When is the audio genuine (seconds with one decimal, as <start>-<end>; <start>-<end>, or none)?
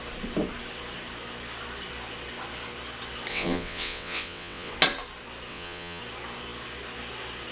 0.0-3.3; 4.7-5.5; 6.0-7.5